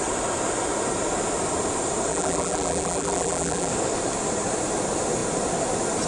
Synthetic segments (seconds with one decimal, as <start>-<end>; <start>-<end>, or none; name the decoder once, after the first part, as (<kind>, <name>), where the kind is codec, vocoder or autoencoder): 2.1-3.7 (vocoder, BigVGAN v2)